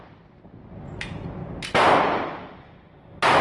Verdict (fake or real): real